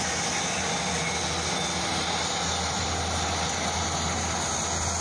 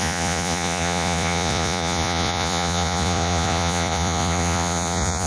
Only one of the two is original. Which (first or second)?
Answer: first